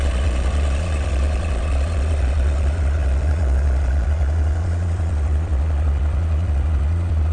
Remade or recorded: remade